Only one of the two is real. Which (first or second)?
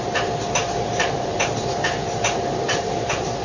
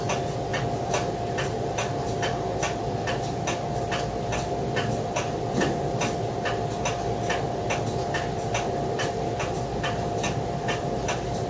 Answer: second